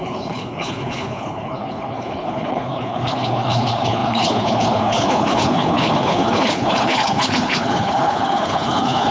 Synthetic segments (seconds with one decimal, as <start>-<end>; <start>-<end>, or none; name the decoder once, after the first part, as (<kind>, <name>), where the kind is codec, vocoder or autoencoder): 0.0-9.1 (codec, HILCodec)